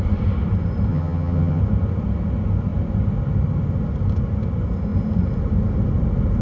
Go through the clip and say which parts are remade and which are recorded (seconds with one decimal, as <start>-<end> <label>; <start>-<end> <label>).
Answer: 0.0-0.9 recorded; 0.9-1.6 remade; 1.6-6.4 recorded